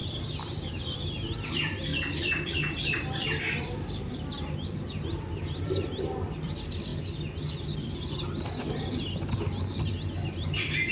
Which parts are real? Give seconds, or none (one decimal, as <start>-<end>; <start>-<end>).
0.0-0.8; 6.9-9.9